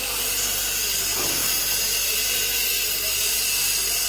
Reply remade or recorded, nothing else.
recorded